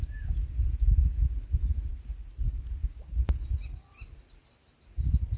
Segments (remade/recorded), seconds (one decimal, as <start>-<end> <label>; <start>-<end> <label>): 0.0-5.4 recorded